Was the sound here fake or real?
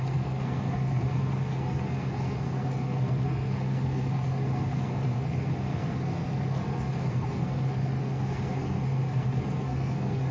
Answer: fake